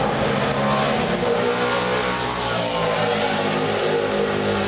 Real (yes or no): yes